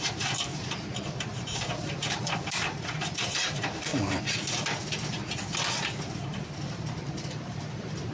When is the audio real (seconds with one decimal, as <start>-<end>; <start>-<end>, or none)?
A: 3.9-6.0